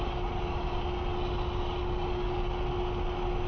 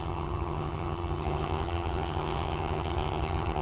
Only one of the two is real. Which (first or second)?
first